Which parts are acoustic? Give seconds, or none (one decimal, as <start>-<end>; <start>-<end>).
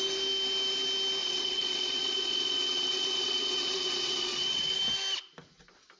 0.0-1.2; 4.8-6.0